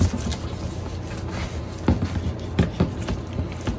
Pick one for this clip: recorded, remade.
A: recorded